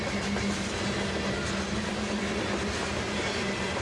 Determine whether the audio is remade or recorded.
recorded